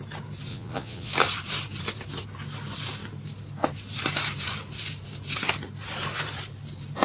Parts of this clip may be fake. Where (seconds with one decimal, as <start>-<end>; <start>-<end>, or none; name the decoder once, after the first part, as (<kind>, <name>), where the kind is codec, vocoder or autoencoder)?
0.5-1.1 (vocoder, Vocos)